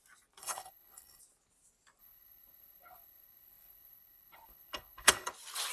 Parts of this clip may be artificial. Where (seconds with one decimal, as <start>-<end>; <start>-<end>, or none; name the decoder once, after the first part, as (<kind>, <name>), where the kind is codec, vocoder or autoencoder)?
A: 0.4-1.2 (codec, HILCodec); 2.0-5.3

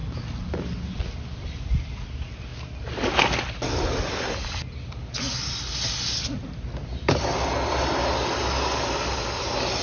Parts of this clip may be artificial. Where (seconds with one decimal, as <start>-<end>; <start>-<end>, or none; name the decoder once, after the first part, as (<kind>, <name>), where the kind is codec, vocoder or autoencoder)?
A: none

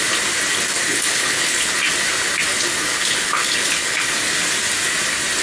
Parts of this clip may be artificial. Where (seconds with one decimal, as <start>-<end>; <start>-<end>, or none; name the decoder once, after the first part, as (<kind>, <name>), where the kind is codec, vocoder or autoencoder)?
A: 0.9-1.7 (codec, HILCodec); 2.5-4.1

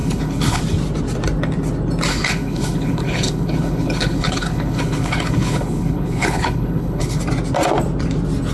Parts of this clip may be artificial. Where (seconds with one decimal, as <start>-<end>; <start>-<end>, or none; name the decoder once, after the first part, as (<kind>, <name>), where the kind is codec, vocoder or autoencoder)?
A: 0.0-0.6 (codec, HILCodec); 2.1-7.2

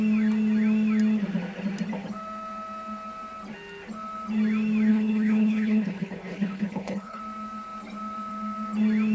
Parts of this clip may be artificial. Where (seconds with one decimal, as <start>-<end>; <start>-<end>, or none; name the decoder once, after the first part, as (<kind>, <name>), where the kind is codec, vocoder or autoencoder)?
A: 4.9-7.2 (codec, HILCodec)

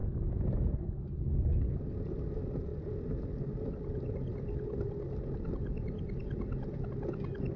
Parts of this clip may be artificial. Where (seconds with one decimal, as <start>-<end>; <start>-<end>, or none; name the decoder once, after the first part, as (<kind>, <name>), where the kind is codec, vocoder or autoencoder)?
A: none

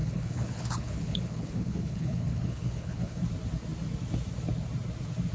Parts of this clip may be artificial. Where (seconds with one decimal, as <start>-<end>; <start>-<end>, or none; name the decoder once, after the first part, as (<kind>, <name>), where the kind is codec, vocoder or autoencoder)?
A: 0.0-3.2 (codec, HILCodec)